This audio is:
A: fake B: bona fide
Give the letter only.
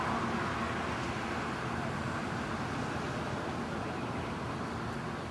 B